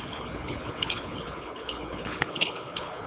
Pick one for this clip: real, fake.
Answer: fake